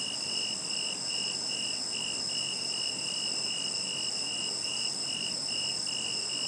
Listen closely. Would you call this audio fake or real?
real